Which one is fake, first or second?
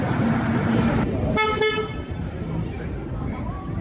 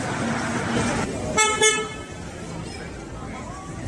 first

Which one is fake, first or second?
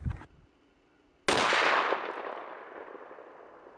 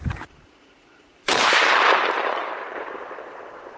second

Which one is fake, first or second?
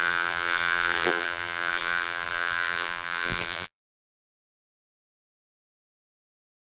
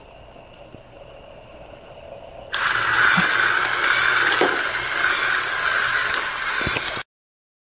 first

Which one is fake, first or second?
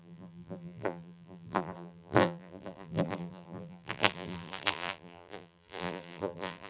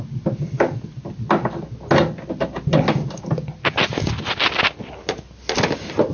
first